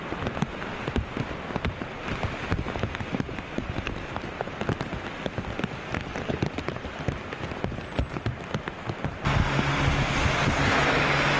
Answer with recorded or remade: recorded